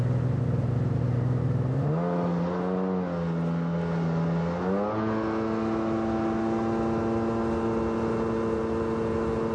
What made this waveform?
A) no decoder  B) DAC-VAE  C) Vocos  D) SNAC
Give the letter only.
A